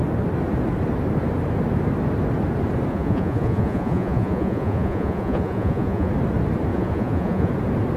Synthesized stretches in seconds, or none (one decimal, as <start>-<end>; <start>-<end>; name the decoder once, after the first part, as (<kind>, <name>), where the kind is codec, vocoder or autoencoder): 2.9-6.1 (vocoder, Vocos); 6.7-7.5

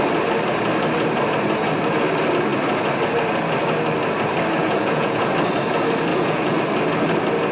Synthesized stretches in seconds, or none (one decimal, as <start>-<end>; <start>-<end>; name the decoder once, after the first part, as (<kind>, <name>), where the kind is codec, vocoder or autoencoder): 4.6-5.3 (vocoder, Vocos); 6.1-6.6

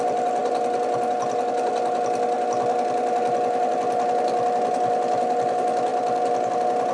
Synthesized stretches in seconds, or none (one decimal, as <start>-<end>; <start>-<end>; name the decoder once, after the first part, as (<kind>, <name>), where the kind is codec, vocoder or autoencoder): none

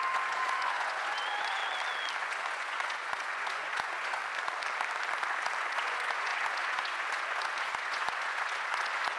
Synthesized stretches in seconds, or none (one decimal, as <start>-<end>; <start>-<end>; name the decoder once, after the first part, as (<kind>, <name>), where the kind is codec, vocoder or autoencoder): 0.0-1.6 (vocoder, Vocos); 2.2-4.2; 5.6-9.2

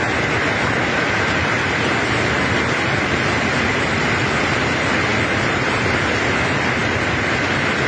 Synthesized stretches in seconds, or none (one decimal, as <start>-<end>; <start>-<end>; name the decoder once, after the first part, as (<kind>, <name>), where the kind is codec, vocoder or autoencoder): none